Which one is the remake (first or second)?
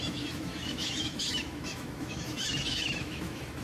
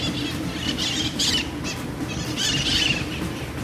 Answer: first